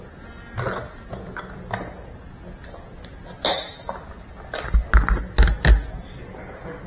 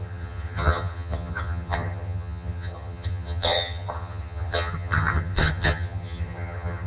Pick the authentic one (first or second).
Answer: first